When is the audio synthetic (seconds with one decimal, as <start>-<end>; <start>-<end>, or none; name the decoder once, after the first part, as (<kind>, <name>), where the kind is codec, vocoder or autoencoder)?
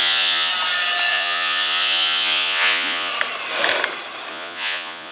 0.0-0.5 (vocoder, Vocos); 1.1-3.1; 4.3-5.1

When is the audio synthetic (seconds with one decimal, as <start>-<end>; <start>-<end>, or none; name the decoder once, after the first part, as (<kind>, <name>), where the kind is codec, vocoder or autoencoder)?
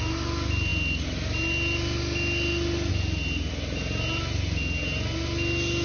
none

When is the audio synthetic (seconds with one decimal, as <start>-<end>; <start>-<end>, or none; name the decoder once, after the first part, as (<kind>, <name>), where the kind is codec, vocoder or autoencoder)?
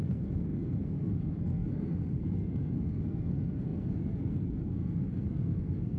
0.0-6.0 (codec, SNAC)